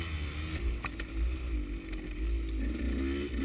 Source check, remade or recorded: recorded